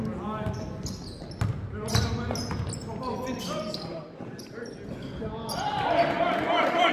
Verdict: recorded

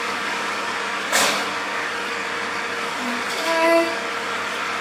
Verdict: remade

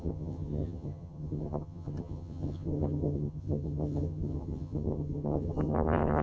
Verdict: remade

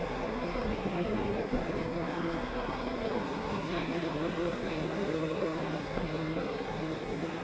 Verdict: remade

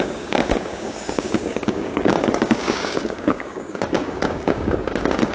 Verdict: remade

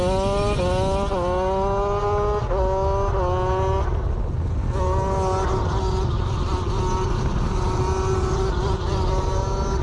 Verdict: recorded